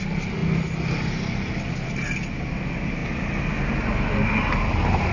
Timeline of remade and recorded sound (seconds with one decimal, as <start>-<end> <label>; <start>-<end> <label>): 0.0-5.1 recorded